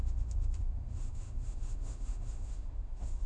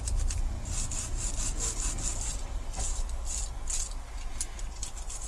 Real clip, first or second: second